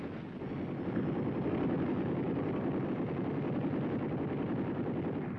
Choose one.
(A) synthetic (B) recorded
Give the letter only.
B